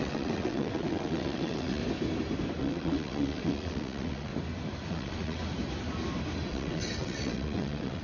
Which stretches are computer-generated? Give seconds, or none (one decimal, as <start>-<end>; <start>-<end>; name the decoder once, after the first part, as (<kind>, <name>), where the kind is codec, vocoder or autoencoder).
0.0-1.8 (vocoder, WaveNeXt); 2.6-4.3; 4.9-5.4; 6.5-8.0